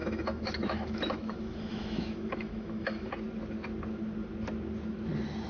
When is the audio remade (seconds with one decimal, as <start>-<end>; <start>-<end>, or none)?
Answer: 0.0-3.1